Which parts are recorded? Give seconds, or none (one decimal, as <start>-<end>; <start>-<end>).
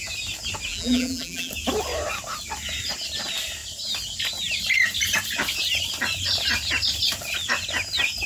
0.0-0.7; 1.5-8.3